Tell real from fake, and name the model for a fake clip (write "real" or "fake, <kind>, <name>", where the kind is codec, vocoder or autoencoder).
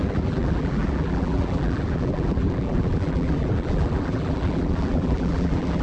fake, vocoder, BigVGAN v2